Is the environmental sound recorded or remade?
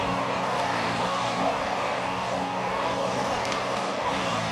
remade